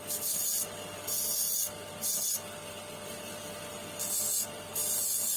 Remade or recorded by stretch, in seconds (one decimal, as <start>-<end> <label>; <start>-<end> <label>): 0.0-5.4 recorded